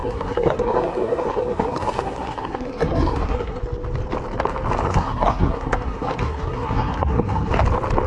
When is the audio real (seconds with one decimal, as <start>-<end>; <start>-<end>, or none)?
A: 3.6-4.9; 7.5-8.1